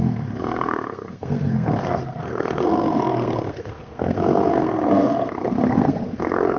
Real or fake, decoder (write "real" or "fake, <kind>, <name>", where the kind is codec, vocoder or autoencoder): fake, codec, SNAC